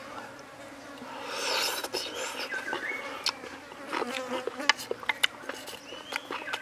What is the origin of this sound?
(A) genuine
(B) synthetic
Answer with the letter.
A